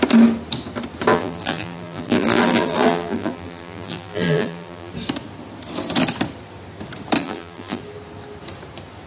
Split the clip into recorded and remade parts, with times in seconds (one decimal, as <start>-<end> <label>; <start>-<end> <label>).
0.0-1.1 recorded; 1.1-4.9 remade; 4.9-7.2 recorded; 7.2-7.8 remade; 7.8-9.1 recorded